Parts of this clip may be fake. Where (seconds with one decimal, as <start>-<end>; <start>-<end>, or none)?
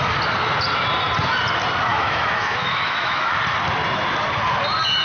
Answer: 1.9-3.4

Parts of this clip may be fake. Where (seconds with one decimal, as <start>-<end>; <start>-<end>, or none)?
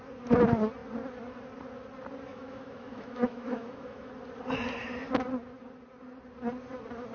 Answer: 2.3-4.1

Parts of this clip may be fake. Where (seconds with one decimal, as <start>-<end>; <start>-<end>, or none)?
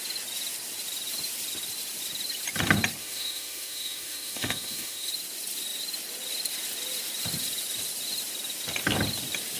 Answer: 3.0-5.1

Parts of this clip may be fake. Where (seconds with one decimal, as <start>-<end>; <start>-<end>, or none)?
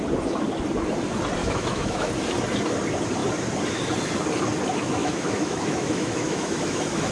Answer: 1.4-2.1; 5.0-7.1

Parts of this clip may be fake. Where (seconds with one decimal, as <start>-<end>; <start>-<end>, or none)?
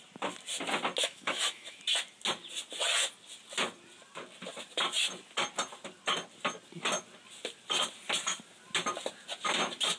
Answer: 1.0-1.8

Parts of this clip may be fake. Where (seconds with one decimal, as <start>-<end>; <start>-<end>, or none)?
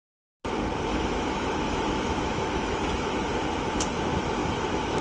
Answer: 0.9-3.2; 4.4-5.0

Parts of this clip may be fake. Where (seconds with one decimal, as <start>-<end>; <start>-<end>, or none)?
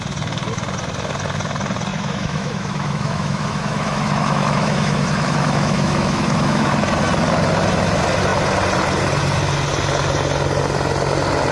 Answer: 1.9-6.7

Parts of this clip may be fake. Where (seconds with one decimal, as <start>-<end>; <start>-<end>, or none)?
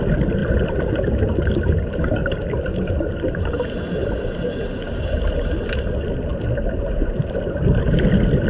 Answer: none